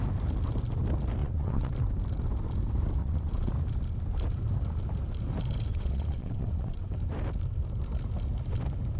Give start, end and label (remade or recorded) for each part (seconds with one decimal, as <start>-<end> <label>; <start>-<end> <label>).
0.0-1.2 recorded; 1.2-1.7 remade; 1.7-3.0 recorded; 3.0-3.5 remade; 3.5-5.7 recorded; 5.7-6.9 remade; 6.9-9.0 recorded